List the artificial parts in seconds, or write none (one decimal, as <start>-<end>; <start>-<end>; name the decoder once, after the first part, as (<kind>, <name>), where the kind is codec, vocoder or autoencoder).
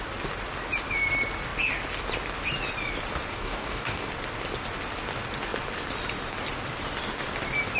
3.3-4.1 (codec, DAC)